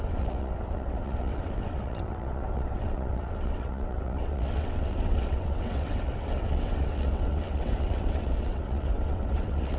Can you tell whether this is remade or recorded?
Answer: remade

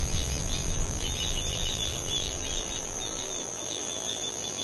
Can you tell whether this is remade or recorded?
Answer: remade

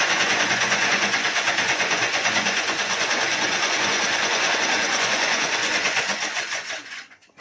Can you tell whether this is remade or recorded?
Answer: remade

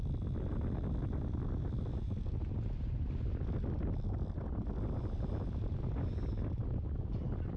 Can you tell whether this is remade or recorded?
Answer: recorded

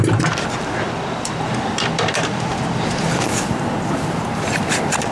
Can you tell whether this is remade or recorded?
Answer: remade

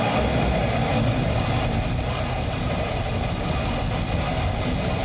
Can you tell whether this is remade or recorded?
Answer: recorded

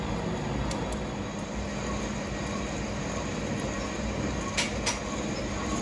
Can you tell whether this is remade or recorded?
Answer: recorded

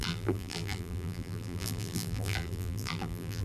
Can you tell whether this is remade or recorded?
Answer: remade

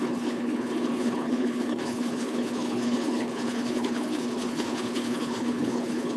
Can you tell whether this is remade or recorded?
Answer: remade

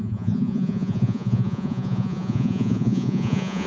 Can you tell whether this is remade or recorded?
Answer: remade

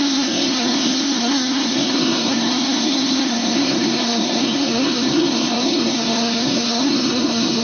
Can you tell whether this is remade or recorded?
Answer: remade